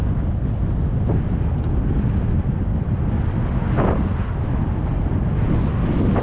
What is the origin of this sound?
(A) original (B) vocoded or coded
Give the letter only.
A